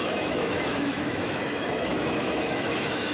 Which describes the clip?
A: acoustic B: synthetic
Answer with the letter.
B